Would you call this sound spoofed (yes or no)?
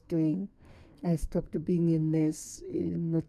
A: yes